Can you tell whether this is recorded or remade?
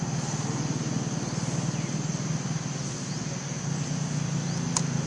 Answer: recorded